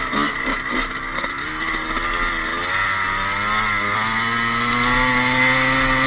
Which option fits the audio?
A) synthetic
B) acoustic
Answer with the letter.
B